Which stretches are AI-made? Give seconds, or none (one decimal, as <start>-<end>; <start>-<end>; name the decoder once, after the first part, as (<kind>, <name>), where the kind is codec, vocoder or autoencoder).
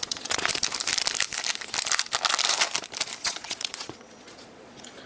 0.0-0.5 (vocoder, Vocos); 3.2-5.1